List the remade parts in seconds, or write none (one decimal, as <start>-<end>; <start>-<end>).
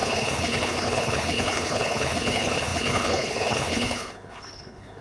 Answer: 0.0-5.0